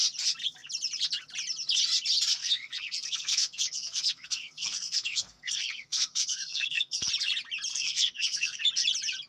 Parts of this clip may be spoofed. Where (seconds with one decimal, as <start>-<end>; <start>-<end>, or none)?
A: 2.4-7.1; 7.7-8.6